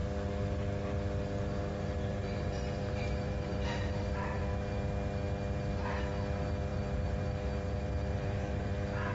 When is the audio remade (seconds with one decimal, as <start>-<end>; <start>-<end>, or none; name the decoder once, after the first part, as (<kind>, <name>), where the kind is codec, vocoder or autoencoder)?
1.7-4.4 (vocoder, BigVGAN v2); 6.7-8.7